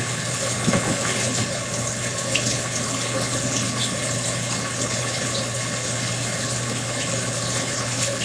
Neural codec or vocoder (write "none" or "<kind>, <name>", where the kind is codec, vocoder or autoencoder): codec, HILCodec